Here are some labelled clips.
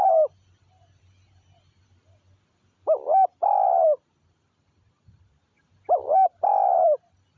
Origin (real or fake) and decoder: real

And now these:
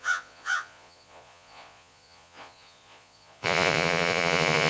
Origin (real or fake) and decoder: fake, vocoder, Vocos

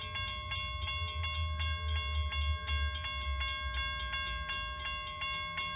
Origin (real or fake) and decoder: real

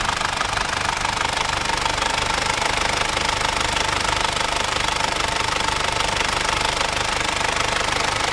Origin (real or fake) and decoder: fake, vocoder, BigVGAN v2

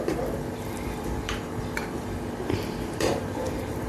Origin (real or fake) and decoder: fake, vocoder, BigVGAN v2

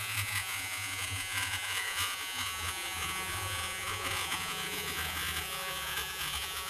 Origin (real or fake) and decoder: fake, vocoder, Vocos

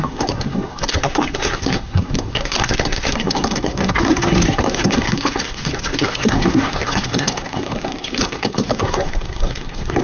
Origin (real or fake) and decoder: fake, codec, SNAC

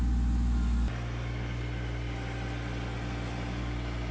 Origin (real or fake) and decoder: real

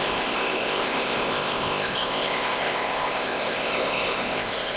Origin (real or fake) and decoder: fake, codec, ZipCodec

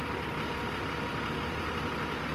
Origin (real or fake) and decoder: real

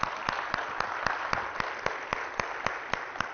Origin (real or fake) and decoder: real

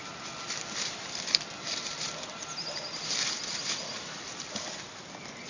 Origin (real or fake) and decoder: real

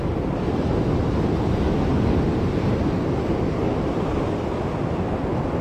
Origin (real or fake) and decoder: real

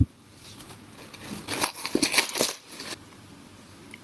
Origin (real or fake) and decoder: real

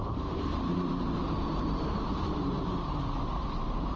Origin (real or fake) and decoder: fake, vocoder, BigVGAN v2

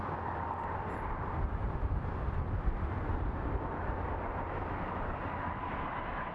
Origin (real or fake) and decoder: fake, vocoder, BigVGAN v2